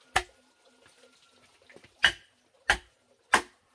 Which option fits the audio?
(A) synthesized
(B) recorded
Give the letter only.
B